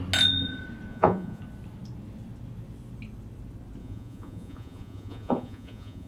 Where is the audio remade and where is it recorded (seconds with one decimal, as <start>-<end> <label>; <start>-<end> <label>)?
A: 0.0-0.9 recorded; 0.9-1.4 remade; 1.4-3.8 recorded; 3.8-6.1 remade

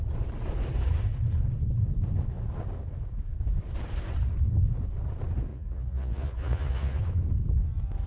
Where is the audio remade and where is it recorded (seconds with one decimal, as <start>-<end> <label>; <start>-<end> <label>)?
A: 0.0-5.5 recorded; 5.5-7.0 remade; 7.0-8.1 recorded

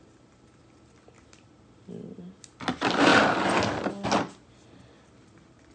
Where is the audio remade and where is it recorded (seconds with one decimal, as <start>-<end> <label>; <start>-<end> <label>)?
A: 0.0-5.7 recorded

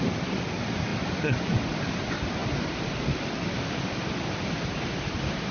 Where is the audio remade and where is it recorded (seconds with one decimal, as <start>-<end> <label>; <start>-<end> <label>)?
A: 0.0-5.5 recorded